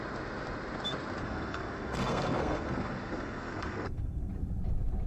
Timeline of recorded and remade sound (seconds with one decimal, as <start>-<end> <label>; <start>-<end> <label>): 0.0-1.2 recorded; 1.2-4.3 remade; 4.3-5.1 recorded